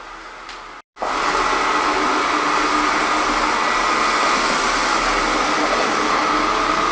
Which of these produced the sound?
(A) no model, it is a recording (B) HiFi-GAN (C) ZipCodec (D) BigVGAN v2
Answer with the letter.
A